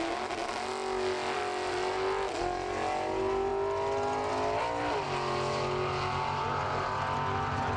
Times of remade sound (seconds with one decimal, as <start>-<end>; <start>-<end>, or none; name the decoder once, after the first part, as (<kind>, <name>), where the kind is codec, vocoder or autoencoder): none